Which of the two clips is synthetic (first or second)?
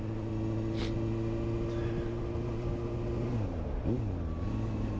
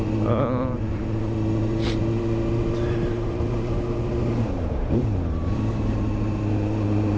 second